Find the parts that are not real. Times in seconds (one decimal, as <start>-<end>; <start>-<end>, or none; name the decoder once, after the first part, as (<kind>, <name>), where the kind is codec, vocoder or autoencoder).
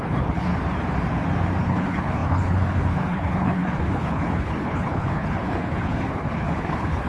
0.0-0.5 (codec, HILCodec); 1.6-7.1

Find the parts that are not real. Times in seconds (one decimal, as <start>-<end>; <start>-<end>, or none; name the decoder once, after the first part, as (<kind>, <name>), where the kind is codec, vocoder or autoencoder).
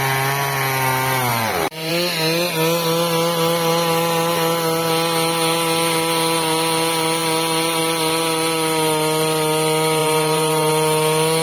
1.3-1.9 (vocoder, BigVGAN v2); 10.0-10.7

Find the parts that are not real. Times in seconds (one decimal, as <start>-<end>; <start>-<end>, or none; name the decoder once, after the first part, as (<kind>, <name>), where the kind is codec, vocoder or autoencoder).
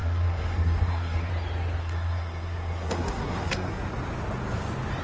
0.0-1.3 (codec, SNAC); 1.8-3.8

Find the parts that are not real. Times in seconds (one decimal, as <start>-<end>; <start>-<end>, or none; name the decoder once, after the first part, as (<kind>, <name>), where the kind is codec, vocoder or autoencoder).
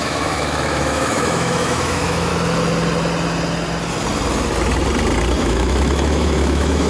0.0-2.3 (autoencoder, DAC-VAE); 5.4-6.9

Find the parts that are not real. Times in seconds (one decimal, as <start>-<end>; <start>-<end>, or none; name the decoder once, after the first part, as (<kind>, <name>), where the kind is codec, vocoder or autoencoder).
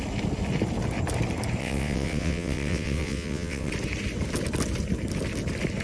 1.6-3.7 (vocoder, WaveNeXt)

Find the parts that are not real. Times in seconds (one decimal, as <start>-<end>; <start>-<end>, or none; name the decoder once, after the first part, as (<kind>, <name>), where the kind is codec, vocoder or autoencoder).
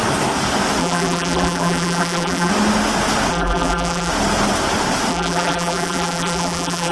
0.8-2.5 (vocoder, BigVGAN v2); 3.3-4.1; 5.1-6.9